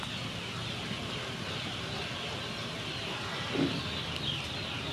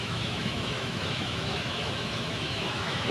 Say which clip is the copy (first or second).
second